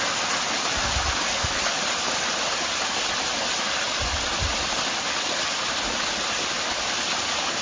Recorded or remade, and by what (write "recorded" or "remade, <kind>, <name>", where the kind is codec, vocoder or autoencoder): recorded